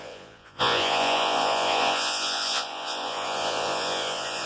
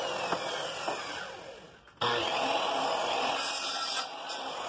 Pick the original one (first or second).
second